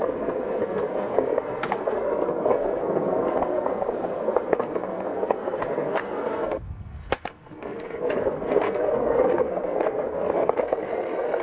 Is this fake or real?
fake